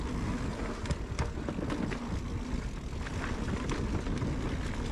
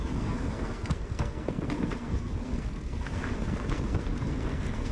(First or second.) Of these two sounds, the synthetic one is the second